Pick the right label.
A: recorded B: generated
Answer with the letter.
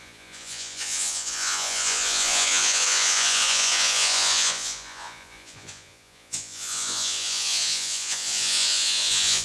B